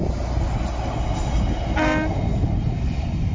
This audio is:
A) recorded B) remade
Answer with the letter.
A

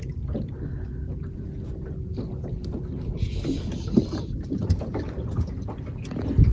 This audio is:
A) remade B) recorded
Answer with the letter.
B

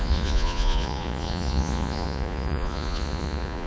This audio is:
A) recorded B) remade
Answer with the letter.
B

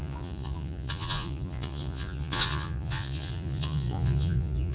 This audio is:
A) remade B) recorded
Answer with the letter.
A